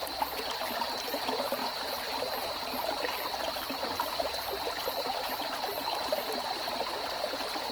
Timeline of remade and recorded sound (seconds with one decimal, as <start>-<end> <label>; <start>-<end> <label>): 0.0-1.6 recorded; 1.6-6.2 remade; 6.2-7.7 recorded